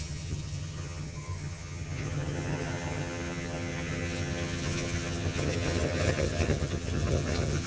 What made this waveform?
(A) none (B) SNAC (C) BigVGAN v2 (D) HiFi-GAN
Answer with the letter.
D